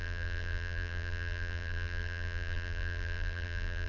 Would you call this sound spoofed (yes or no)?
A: yes